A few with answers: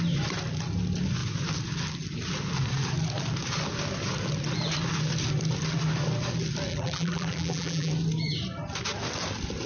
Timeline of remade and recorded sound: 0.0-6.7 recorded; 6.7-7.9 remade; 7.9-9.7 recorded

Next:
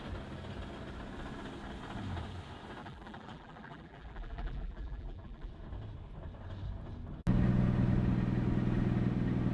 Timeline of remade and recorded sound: 0.0-2.8 recorded; 2.8-5.5 remade; 5.5-9.5 recorded

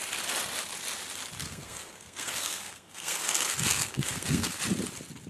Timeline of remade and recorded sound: 0.0-1.4 recorded; 1.4-4.6 remade; 4.6-5.3 recorded

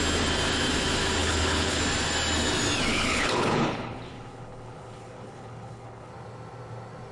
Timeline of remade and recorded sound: 0.0-1.2 recorded; 1.2-1.8 remade; 1.8-2.9 recorded; 2.9-6.1 remade; 6.1-7.1 recorded

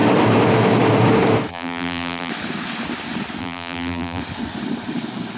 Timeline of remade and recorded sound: 0.0-1.5 recorded; 1.5-2.3 remade; 2.3-3.4 recorded; 3.4-4.2 remade; 4.2-5.4 recorded